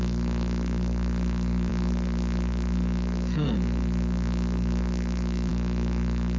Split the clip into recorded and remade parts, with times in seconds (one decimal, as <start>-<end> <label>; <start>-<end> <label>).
0.0-6.4 remade